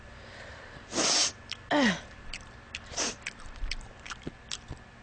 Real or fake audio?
real